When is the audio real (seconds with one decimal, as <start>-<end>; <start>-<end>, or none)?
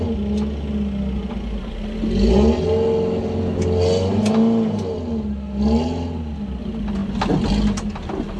0.0-8.4